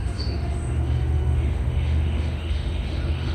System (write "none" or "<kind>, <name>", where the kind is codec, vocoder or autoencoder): autoencoder, DAC-VAE